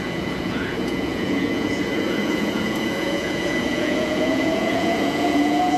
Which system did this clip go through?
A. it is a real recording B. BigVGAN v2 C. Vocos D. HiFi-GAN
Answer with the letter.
C